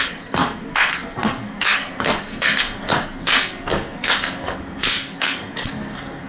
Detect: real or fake fake